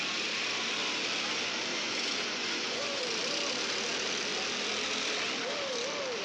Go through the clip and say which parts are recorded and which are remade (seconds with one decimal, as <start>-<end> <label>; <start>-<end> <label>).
0.0-1.7 recorded; 1.7-3.0 remade; 3.0-6.2 recorded